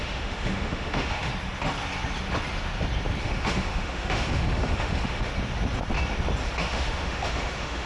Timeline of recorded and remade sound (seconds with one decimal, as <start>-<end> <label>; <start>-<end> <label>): 0.0-1.3 remade; 1.3-3.2 recorded; 3.2-5.3 remade; 5.3-6.6 recorded; 6.6-7.9 remade